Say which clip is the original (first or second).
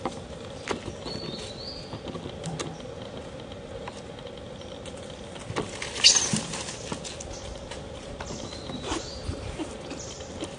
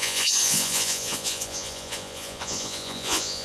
first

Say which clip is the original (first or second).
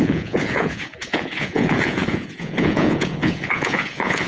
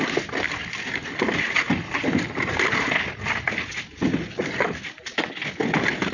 second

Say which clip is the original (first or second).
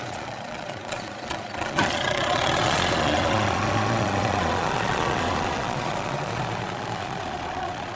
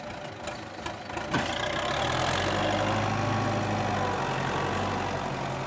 second